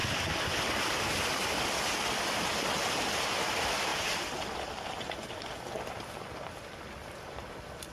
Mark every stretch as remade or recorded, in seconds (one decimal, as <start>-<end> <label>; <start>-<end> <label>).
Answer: 0.0-3.1 recorded; 3.1-7.9 remade